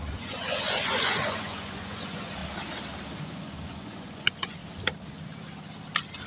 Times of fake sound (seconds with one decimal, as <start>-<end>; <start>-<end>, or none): 0.0-2.4; 3.2-4.6